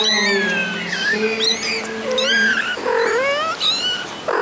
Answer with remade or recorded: recorded